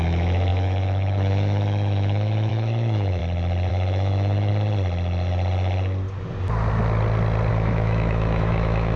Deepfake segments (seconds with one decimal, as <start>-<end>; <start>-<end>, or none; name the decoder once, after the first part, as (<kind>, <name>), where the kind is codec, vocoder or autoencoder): 0.0-3.2 (autoencoder, DAC-VAE); 3.7-4.5; 7.5-9.0